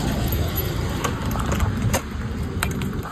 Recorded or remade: recorded